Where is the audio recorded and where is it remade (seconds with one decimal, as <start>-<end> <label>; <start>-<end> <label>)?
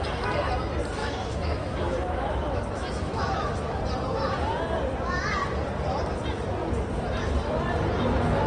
0.0-1.0 recorded; 1.0-3.8 remade; 3.8-8.5 recorded